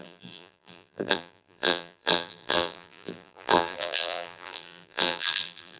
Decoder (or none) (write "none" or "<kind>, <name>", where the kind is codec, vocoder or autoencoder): vocoder, BigVGAN v2